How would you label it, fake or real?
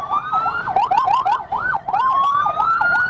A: fake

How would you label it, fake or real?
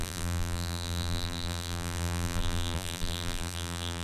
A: fake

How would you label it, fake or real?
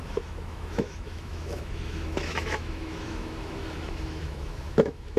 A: fake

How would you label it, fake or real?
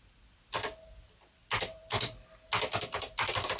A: real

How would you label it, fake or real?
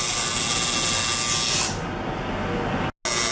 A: real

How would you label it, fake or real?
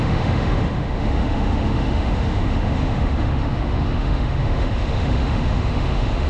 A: fake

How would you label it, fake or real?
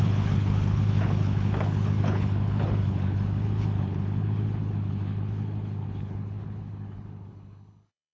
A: fake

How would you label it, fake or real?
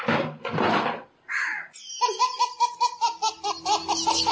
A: real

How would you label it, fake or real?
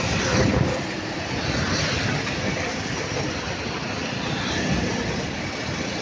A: real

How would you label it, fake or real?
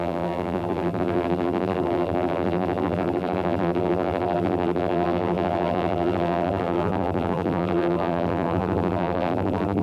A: fake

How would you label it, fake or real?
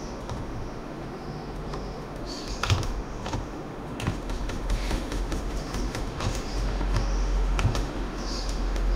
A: fake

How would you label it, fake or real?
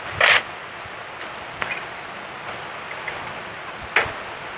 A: real